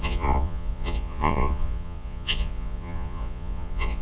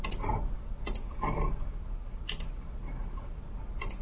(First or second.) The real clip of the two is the second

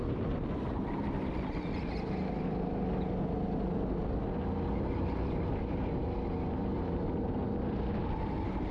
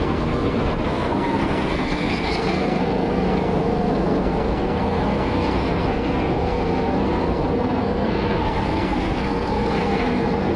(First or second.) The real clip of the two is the first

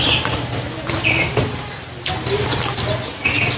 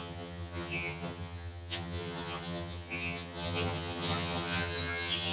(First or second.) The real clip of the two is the first